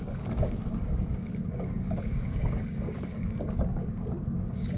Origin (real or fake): fake